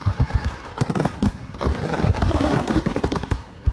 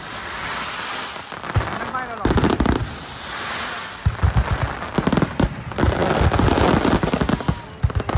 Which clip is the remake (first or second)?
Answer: first